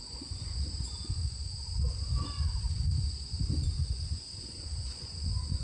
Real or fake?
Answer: fake